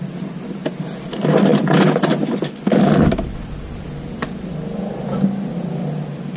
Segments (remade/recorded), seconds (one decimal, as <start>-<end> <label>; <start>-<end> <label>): 0.0-6.4 recorded